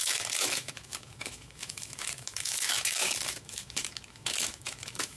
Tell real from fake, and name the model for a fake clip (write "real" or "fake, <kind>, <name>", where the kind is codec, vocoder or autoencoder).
fake, autoencoder, DAC-VAE